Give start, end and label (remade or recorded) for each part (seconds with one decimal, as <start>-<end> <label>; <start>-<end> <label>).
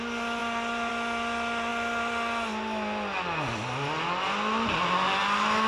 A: 0.0-5.7 recorded